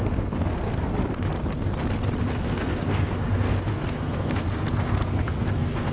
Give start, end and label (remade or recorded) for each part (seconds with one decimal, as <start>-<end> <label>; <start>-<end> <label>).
0.0-1.0 remade; 1.0-2.2 recorded; 2.2-5.9 remade